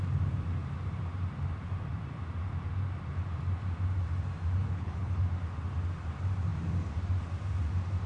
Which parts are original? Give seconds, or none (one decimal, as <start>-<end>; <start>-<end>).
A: 0.0-4.6; 5.2-8.1